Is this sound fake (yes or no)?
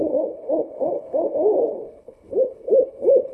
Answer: yes